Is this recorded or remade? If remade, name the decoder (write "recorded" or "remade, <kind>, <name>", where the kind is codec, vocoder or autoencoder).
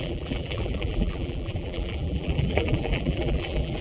remade, vocoder, BigVGAN v2